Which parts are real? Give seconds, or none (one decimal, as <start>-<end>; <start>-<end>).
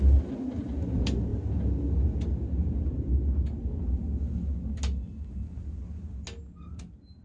0.0-7.2